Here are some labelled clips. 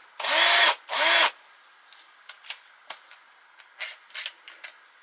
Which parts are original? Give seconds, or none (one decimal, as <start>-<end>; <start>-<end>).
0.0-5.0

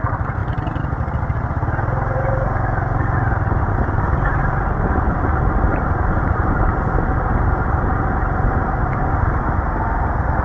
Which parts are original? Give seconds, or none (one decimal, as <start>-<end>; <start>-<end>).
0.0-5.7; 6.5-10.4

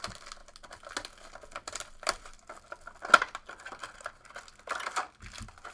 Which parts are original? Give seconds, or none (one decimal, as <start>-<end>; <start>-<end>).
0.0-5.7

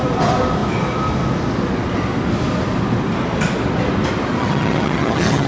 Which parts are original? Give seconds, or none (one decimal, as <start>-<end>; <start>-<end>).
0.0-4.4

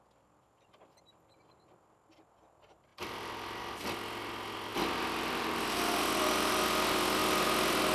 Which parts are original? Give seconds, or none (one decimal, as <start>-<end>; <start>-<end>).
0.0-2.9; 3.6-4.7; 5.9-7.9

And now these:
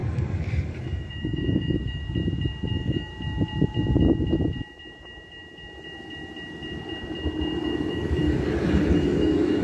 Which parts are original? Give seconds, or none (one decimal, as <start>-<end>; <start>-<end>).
2.0-2.7; 3.1-7.6

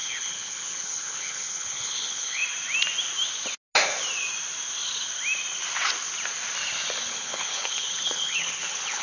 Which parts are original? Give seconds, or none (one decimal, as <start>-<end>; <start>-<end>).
2.4-7.1

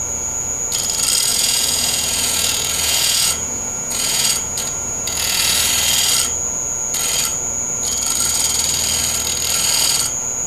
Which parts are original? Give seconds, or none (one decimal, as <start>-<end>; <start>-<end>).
0.0-1.3; 5.7-10.5